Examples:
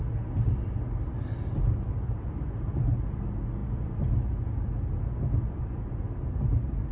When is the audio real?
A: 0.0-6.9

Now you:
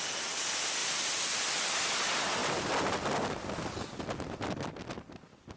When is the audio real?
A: 0.0-5.6

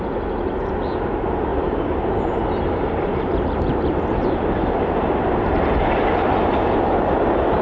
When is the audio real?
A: 0.0-1.5; 5.4-7.6

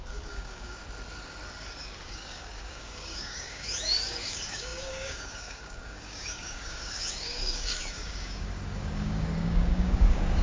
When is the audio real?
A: 0.8-1.8

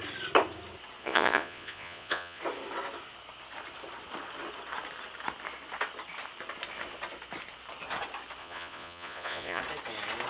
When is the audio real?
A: 0.0-1.0; 2.4-8.4; 9.6-10.3